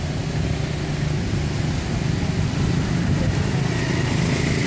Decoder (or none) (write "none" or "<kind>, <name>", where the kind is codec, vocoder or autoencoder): none